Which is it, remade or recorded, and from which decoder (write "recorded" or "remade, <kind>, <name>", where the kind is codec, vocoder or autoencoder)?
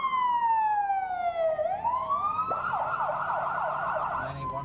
recorded